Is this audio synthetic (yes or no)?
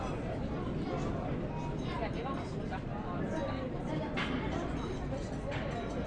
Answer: no